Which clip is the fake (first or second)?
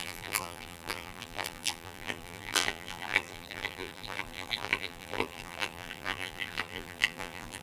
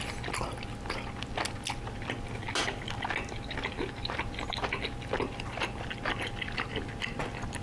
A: first